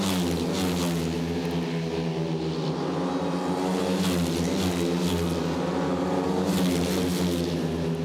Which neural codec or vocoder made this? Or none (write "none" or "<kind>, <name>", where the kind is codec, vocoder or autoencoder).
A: none